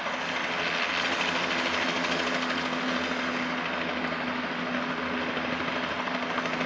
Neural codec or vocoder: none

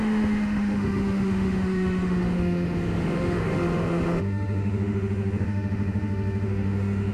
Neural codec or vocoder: autoencoder, DAC-VAE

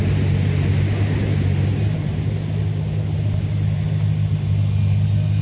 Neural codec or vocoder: none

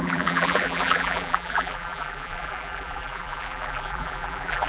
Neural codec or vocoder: vocoder, BigVGAN v2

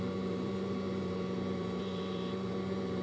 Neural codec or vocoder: vocoder, BigVGAN v2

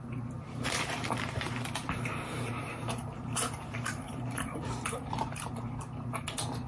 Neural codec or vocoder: vocoder, BigVGAN v2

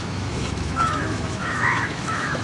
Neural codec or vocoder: autoencoder, DAC-VAE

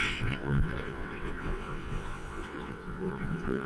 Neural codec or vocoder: vocoder, WaveNeXt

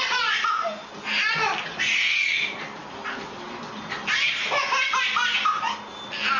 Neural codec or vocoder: none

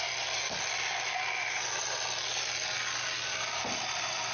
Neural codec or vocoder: none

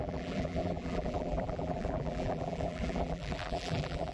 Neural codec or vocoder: vocoder, BigVGAN v2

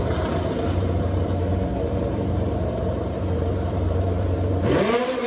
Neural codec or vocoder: vocoder, BigVGAN v2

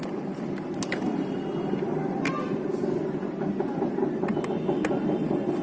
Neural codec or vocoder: none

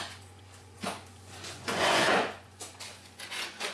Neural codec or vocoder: vocoder, Vocos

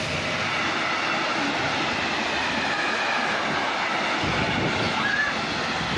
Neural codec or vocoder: none